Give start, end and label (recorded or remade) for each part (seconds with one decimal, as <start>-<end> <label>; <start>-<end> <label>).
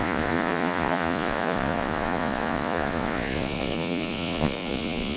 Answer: 0.0-5.2 remade